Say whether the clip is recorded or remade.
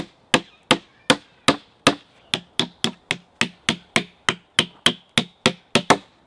recorded